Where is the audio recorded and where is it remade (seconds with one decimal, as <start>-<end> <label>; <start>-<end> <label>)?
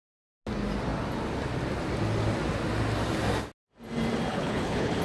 0.0-4.3 recorded; 4.3-5.0 remade